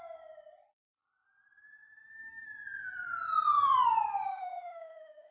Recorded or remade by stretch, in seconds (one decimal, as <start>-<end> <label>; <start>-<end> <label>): 0.0-4.3 recorded; 4.3-5.3 remade